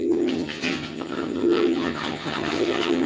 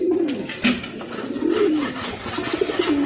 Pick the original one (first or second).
second